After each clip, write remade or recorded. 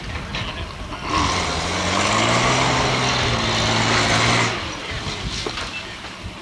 recorded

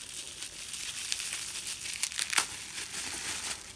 recorded